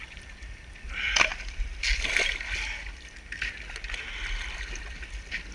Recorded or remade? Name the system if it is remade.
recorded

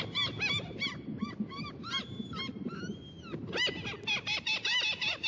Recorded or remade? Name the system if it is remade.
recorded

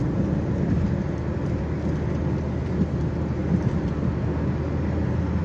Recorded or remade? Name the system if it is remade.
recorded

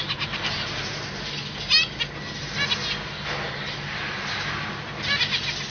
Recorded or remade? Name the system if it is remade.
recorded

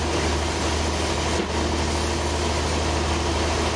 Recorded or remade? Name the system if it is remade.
recorded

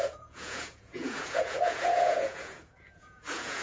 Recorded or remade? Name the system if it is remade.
remade, vocoder, Vocos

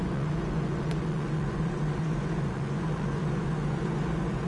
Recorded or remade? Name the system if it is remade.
remade, vocoder, Vocos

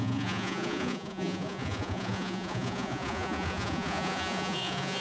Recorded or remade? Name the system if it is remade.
remade, vocoder, Vocos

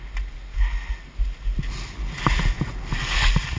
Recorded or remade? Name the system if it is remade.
recorded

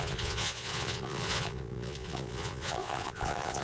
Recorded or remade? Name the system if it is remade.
remade, vocoder, Vocos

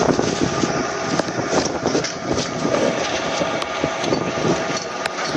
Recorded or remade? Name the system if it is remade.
recorded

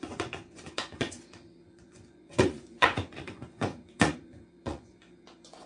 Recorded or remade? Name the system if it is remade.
remade, vocoder, Vocos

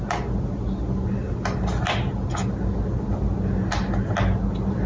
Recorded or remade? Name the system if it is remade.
recorded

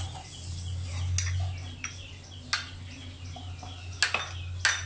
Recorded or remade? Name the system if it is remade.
recorded